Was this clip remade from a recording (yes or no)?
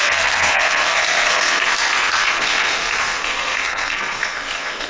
yes